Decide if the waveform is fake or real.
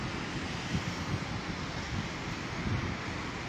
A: real